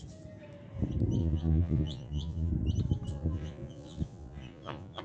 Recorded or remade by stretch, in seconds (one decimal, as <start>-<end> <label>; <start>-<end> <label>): 0.0-1.2 recorded; 1.2-2.5 remade; 2.5-3.1 recorded; 3.1-5.0 remade